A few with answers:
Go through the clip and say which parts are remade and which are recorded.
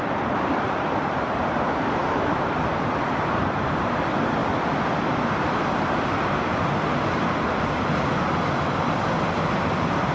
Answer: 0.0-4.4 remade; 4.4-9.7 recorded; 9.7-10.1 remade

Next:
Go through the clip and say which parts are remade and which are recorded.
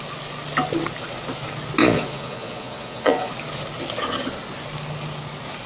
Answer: 0.0-1.8 recorded; 1.8-3.3 remade; 3.3-5.7 recorded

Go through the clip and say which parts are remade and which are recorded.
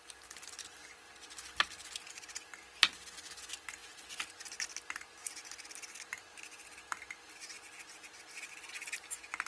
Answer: 0.0-9.5 recorded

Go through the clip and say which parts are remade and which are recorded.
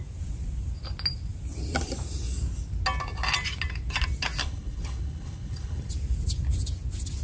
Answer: 0.0-4.4 recorded; 4.4-5.9 remade; 5.9-7.2 recorded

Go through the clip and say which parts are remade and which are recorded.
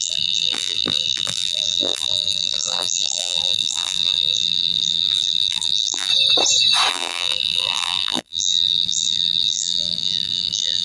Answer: 0.0-6.1 remade; 6.1-6.9 recorded; 6.9-10.8 remade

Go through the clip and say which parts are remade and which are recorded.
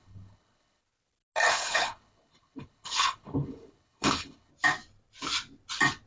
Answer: 0.0-0.8 remade; 0.8-1.5 recorded; 1.5-4.5 remade; 4.5-6.1 recorded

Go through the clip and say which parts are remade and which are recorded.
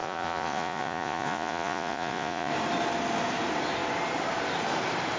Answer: 0.0-2.5 remade; 2.5-5.2 recorded